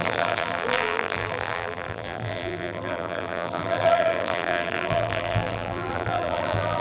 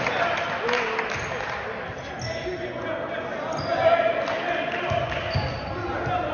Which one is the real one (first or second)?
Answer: second